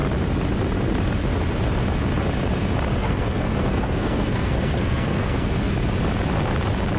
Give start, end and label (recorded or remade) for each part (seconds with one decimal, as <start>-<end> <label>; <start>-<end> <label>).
0.0-3.0 recorded; 3.0-5.7 remade; 5.7-7.0 recorded